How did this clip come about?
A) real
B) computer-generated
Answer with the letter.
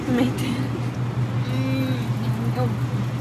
A